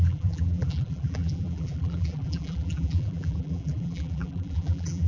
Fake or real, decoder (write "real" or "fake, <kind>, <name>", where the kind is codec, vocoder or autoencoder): fake, vocoder, BigVGAN v2